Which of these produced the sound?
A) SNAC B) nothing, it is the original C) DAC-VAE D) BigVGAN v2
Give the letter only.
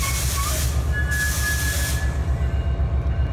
B